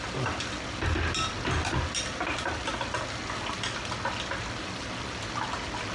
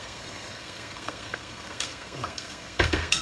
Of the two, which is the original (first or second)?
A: first